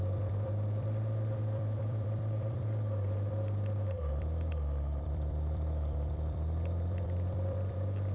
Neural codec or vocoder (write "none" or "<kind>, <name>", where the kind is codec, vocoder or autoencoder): vocoder, BigVGAN v2